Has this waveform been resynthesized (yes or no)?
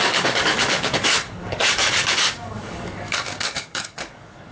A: yes